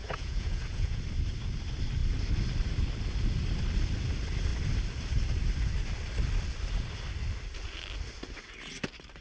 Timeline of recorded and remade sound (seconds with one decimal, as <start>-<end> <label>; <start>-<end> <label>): 0.0-1.0 remade; 1.0-9.2 recorded

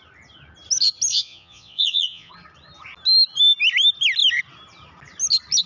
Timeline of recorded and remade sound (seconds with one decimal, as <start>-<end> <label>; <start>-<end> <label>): 0.0-1.1 recorded; 1.1-2.3 remade; 2.3-5.7 recorded

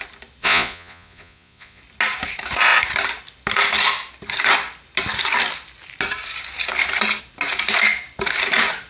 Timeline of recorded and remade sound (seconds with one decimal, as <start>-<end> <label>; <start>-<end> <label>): 0.0-0.4 recorded; 0.4-1.8 remade; 1.8-8.9 recorded

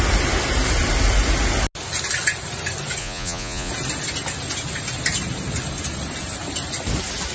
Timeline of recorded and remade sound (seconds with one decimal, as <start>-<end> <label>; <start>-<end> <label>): 0.0-3.0 recorded; 3.0-3.7 remade; 3.7-7.3 recorded

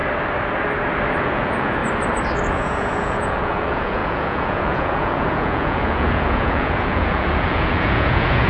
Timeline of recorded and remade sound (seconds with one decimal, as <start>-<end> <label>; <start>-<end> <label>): 0.0-1.2 recorded; 1.2-1.8 remade; 1.8-2.5 recorded; 2.5-8.5 remade

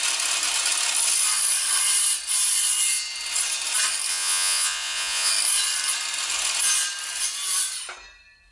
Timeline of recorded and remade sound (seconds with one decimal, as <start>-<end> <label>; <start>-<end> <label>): 0.0-4.1 recorded; 4.1-5.3 remade; 5.3-8.5 recorded

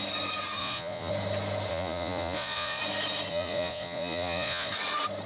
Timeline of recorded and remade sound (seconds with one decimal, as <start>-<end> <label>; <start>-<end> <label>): 0.0-0.6 recorded; 0.6-1.1 remade; 1.1-1.7 recorded; 1.7-2.8 remade; 2.8-3.3 recorded; 3.3-4.7 remade; 4.7-5.3 recorded

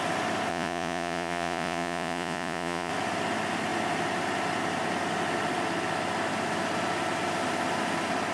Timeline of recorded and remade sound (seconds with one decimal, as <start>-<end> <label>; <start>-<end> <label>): 0.0-0.5 recorded; 0.5-2.9 remade; 2.9-8.3 recorded